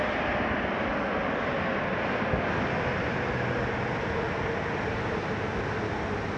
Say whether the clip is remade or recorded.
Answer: recorded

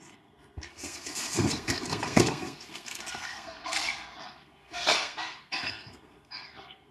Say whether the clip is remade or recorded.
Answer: remade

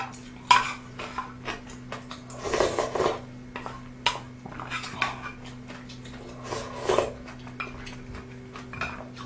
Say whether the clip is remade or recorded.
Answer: recorded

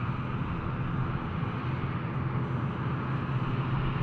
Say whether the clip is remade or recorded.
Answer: recorded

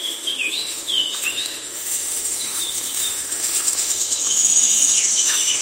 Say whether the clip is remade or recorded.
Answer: remade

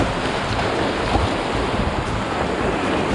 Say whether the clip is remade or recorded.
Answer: recorded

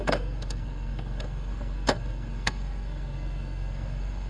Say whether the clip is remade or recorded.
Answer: remade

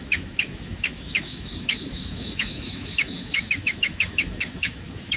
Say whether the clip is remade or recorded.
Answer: remade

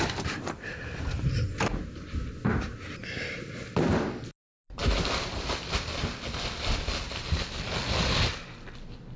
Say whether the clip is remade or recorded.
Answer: recorded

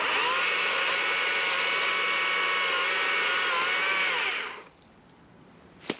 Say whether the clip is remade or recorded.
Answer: recorded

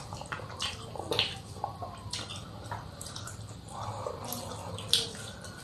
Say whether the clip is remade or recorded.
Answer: recorded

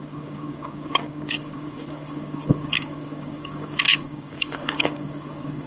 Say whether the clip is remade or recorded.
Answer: remade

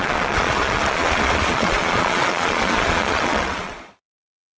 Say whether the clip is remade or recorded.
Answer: remade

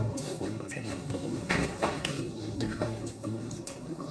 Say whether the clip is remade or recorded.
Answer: remade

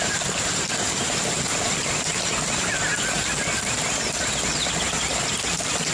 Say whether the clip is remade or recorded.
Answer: recorded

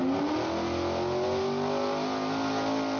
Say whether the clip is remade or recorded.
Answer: recorded